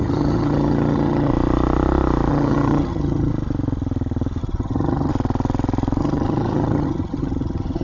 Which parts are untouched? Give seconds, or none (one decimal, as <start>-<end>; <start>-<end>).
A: 1.3-2.3; 3.3-4.4; 5.1-6.0